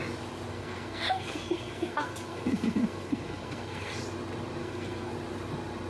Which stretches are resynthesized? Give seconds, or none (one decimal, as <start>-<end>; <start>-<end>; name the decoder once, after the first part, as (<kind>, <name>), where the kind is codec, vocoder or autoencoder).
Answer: 0.5-4.0 (codec, SNAC); 4.6-5.1